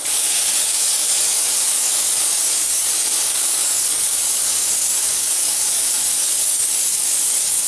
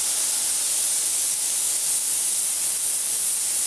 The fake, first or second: first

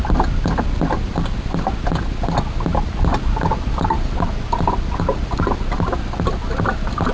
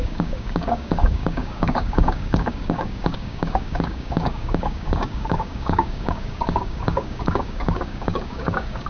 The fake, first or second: second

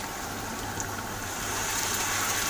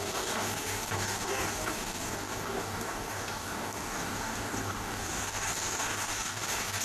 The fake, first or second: second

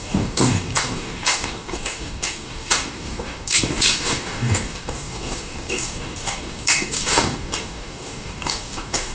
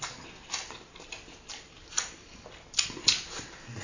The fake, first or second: first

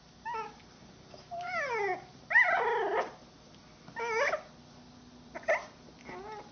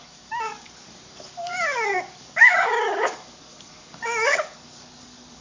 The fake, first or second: second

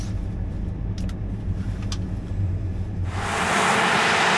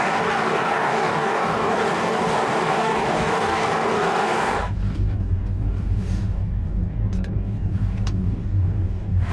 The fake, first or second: second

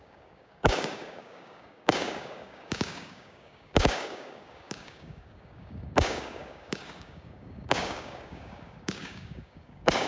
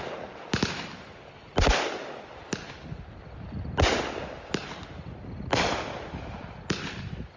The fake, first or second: first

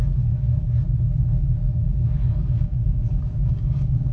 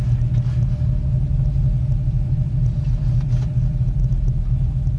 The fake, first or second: first